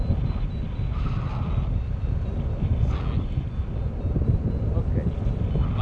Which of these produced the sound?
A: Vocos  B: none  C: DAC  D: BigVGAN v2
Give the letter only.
B